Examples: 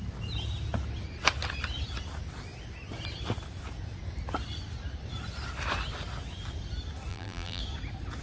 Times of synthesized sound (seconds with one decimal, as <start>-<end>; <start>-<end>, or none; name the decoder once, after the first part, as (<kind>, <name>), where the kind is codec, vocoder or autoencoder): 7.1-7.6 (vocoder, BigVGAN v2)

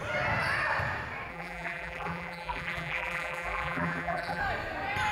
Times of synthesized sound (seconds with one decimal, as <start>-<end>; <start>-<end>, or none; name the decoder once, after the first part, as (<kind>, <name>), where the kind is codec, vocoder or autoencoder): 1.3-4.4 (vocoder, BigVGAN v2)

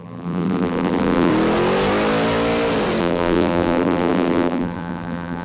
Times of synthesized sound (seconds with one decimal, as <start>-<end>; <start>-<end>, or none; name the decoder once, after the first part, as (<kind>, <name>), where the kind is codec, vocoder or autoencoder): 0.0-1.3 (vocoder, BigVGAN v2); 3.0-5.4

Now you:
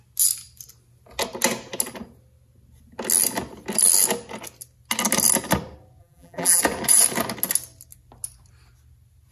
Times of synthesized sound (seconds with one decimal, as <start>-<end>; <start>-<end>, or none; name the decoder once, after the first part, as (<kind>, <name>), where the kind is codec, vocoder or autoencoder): 6.0-6.6 (vocoder, BigVGAN v2)

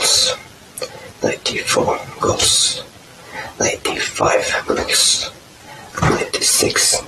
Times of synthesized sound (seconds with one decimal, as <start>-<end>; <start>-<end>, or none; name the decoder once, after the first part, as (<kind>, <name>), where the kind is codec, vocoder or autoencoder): 5.7-6.5 (vocoder, BigVGAN v2)